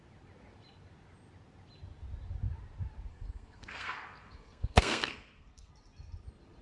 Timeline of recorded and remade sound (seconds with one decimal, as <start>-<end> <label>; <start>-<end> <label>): 0.0-3.1 recorded; 3.1-5.7 remade; 5.7-6.6 recorded